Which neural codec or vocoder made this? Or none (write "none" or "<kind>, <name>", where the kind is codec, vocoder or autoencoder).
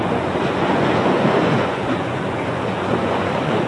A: vocoder, Vocos